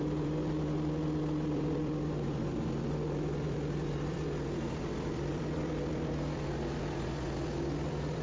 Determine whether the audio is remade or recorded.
remade